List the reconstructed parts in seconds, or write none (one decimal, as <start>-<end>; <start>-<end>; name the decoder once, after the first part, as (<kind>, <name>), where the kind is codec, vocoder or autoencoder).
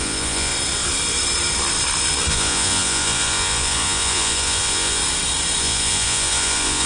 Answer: 0.0-0.5 (vocoder, Vocos); 2.3-5.0; 5.6-6.9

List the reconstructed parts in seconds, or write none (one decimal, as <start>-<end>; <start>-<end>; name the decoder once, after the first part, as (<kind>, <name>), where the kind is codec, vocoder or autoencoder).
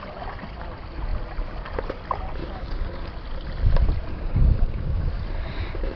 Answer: 2.4-3.1 (codec, DAC); 4.1-5.1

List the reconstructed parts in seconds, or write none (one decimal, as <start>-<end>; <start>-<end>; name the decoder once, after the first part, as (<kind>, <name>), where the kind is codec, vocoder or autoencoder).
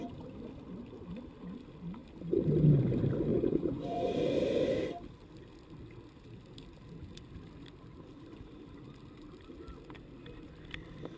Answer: 3.3-4.2 (vocoder, Vocos)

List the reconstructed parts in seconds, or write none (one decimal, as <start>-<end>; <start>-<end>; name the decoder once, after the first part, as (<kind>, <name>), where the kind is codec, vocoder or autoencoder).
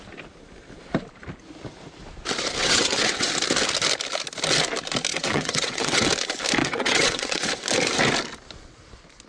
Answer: 2.6-3.3 (vocoder, WaveNeXt); 5.1-6.1; 6.6-7.5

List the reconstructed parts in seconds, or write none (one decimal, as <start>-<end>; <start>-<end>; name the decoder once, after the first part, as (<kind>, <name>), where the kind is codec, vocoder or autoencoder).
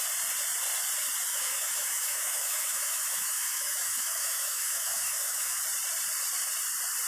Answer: 1.3-5.6 (autoencoder, DAC-VAE)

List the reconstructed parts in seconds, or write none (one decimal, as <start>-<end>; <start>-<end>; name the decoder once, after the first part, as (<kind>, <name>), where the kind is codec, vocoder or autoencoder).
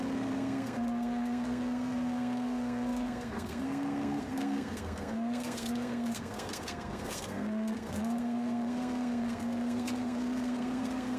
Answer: 0.0-11.2 (codec, SNAC)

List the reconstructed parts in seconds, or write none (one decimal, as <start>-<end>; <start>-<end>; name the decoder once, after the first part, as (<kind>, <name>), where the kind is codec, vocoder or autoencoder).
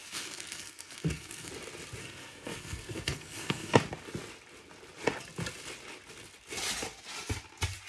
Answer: 0.0-1.5 (codec, SNAC); 2.0-3.8